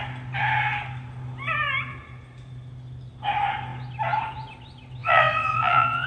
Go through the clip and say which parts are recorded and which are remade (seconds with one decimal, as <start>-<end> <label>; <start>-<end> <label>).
0.0-5.0 recorded; 5.0-6.1 remade